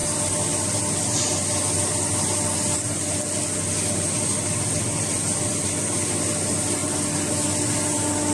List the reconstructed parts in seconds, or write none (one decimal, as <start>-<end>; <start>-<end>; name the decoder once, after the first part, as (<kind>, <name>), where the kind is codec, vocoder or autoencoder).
none